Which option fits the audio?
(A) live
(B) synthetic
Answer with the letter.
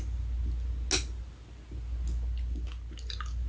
A